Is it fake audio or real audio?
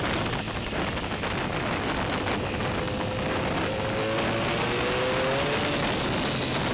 real